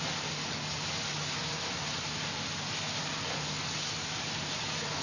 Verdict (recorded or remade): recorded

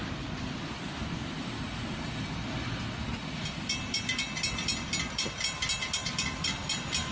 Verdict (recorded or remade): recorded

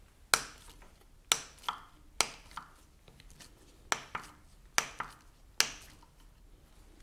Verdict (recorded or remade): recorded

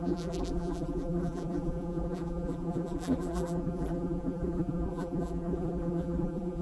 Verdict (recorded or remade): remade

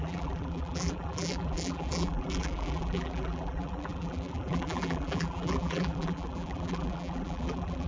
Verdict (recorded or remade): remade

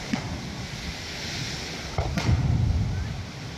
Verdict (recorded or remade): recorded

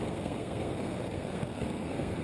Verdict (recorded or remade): remade